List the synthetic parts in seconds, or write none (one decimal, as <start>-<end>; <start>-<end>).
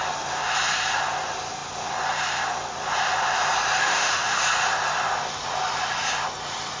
3.8-4.4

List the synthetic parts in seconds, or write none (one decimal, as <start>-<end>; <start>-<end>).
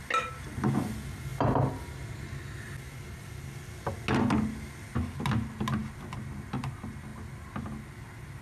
none